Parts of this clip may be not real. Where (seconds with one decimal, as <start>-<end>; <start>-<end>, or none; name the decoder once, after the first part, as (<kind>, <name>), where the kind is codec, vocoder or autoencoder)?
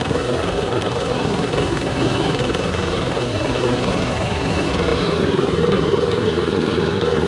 0.0-7.3 (codec, SNAC)